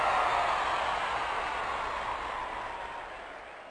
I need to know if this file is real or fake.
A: real